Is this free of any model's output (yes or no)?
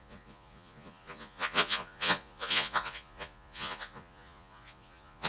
no